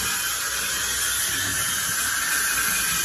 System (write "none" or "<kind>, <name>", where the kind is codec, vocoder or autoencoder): none